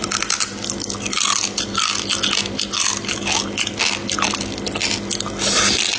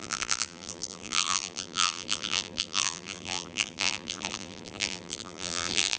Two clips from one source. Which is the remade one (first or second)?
second